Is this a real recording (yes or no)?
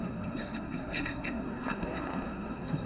no